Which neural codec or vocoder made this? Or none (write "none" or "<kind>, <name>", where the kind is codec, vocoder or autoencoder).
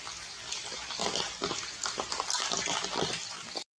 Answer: none